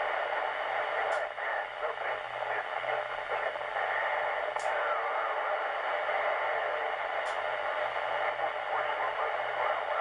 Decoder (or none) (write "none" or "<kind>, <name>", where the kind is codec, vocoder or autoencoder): none